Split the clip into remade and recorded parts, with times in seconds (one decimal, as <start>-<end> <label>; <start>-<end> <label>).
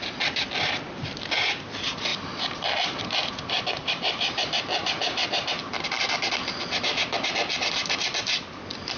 0.0-2.1 recorded; 2.1-6.0 remade; 6.0-9.0 recorded